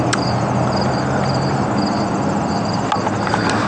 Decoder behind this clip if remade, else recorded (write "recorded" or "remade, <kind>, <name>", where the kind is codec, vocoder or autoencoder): recorded